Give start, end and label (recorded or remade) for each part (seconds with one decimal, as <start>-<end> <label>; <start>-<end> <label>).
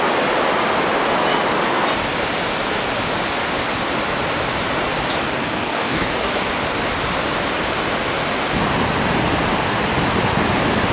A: 0.0-5.2 recorded; 5.2-6.3 remade; 6.3-10.9 recorded